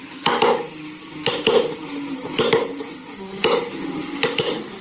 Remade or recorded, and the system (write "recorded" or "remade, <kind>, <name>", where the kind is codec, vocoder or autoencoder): recorded